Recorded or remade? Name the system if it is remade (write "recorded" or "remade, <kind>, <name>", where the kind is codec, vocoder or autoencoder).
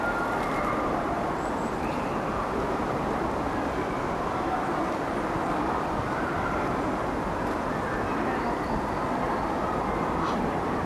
remade, vocoder, BigVGAN v2